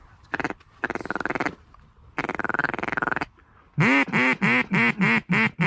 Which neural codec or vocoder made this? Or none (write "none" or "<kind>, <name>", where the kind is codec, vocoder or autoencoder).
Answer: none